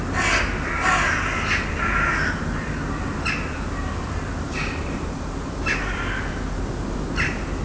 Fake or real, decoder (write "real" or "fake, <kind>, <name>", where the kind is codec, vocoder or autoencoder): real